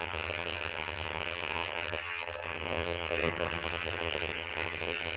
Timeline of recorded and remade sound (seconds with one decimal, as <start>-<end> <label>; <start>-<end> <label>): 0.0-5.2 remade

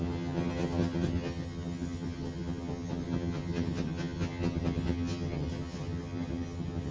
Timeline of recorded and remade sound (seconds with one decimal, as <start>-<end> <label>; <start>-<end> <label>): 0.0-6.9 remade

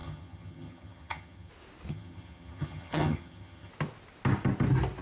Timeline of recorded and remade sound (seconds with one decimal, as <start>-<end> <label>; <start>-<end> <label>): 0.0-1.5 remade; 1.5-1.9 recorded; 1.9-3.7 remade; 3.7-5.0 recorded

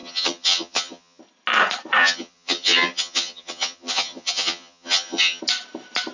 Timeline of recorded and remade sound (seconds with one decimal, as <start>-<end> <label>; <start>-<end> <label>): 0.0-1.2 remade; 1.2-2.0 recorded; 2.0-5.4 remade; 5.4-6.1 recorded